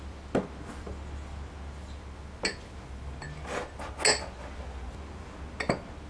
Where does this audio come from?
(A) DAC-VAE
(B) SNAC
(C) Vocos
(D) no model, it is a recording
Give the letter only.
D